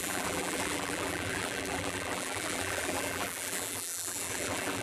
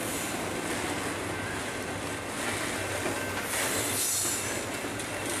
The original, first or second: second